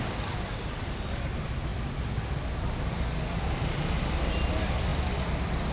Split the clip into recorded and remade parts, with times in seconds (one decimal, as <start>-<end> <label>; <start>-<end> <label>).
0.0-5.7 recorded